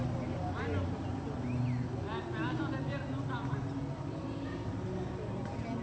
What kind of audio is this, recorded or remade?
recorded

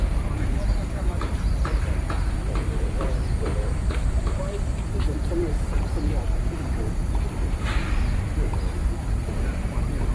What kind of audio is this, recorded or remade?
remade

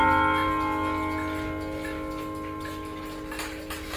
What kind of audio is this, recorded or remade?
recorded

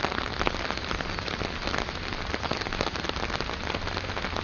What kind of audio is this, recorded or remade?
recorded